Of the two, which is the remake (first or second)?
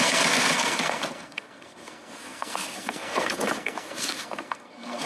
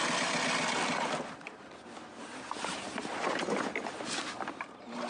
first